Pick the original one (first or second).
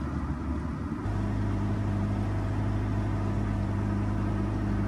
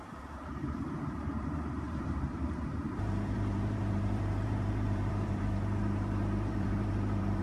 first